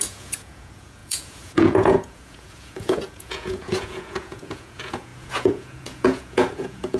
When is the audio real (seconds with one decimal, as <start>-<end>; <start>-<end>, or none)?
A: none